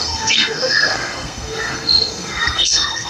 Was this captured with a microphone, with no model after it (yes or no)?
no